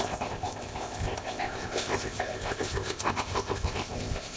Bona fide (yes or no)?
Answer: no